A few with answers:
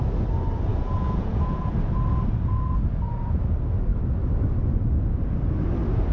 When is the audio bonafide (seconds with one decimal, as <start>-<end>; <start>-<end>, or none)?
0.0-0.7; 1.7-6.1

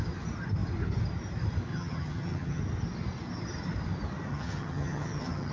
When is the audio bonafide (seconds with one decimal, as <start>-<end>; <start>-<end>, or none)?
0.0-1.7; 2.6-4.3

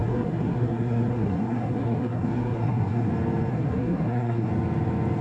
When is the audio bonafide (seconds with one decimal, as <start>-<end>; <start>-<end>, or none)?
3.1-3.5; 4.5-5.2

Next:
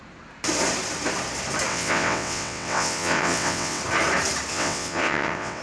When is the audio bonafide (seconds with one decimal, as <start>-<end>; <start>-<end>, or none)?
0.0-1.7; 3.8-4.5

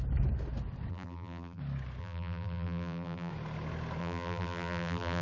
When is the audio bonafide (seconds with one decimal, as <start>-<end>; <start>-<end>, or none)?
0.0-0.9; 1.6-2.0; 3.3-4.0

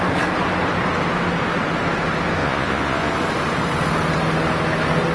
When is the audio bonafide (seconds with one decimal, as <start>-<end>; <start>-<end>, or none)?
0.0-2.4; 3.1-5.1